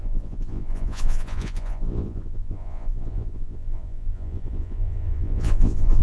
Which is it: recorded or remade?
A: remade